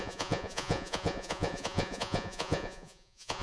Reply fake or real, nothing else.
fake